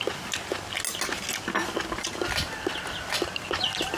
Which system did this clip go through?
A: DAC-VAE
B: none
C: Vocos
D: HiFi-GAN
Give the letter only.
B